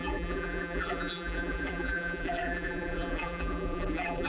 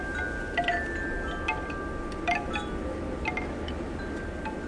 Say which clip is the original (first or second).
second